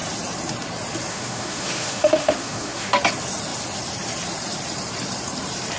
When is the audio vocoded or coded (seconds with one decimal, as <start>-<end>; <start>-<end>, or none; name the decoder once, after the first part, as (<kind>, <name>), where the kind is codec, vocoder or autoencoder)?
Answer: 1.1-2.9 (autoencoder, DAC-VAE)